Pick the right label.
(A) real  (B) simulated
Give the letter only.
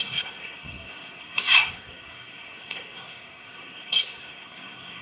B